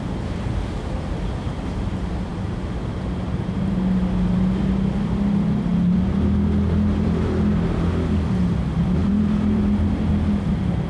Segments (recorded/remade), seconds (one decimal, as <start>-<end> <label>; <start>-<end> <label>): 0.0-9.0 recorded; 9.0-10.1 remade; 10.1-10.9 recorded